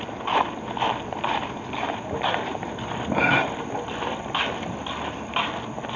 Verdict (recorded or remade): recorded